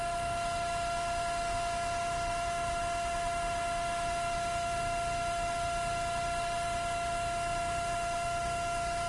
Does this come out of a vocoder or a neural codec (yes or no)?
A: yes